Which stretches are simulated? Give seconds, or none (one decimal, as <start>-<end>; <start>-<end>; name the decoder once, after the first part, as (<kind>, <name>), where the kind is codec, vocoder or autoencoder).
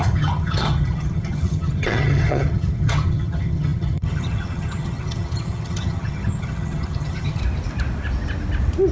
0.0-7.4 (vocoder, HiFi-GAN)